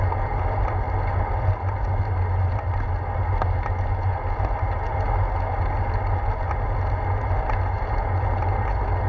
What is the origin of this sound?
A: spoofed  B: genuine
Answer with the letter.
B